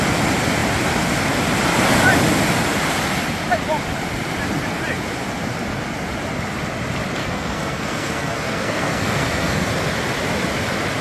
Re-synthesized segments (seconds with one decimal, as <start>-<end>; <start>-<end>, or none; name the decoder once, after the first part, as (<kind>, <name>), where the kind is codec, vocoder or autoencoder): 7.2-9.7 (codec, SNAC)